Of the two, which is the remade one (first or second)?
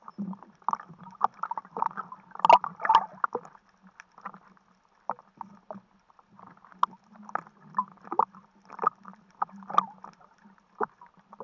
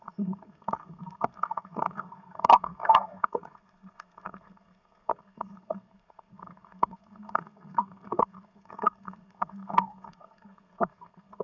second